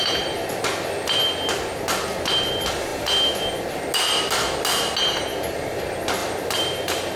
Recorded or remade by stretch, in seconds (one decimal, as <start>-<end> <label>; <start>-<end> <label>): 0.0-6.2 recorded; 6.2-7.2 remade